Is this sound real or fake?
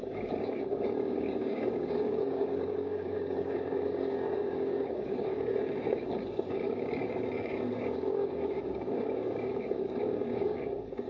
fake